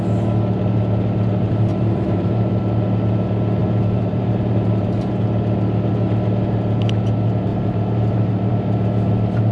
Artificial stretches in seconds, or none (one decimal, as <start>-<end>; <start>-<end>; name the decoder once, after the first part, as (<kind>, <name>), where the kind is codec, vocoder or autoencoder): 1.7-2.6 (vocoder, BigVGAN v2); 3.6-5.1; 7.5-8.5